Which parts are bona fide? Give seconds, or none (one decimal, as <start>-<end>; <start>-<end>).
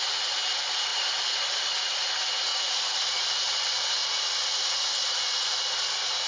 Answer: 0.0-2.5; 3.2-6.3